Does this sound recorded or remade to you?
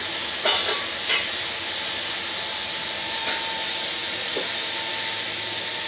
recorded